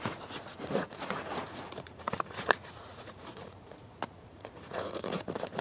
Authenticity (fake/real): fake